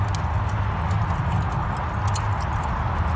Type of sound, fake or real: real